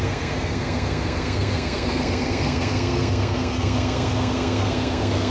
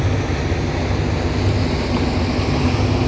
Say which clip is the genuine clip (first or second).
second